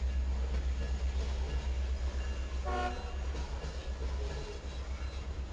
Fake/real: real